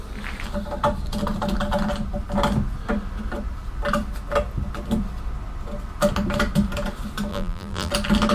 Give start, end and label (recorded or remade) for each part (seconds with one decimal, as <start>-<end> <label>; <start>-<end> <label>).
0.0-7.3 recorded; 7.3-7.9 remade; 7.9-8.3 recorded